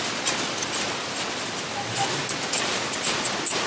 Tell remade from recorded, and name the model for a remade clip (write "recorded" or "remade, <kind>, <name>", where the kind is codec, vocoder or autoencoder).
recorded